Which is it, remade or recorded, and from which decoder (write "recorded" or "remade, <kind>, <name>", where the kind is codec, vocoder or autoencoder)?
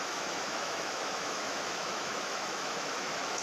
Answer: remade, autoencoder, DAC-VAE